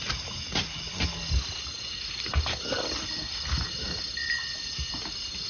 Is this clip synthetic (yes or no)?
no